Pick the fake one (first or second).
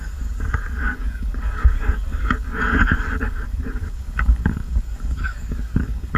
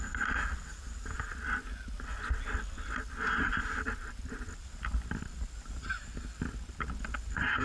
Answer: first